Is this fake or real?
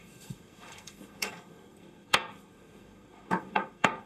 fake